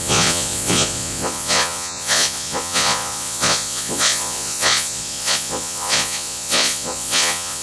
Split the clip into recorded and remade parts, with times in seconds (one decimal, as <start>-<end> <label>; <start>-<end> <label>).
0.0-7.6 remade